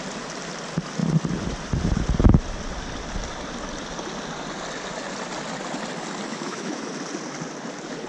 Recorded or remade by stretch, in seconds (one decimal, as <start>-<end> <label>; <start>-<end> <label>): 0.0-6.3 recorded; 6.3-6.8 remade; 6.8-8.1 recorded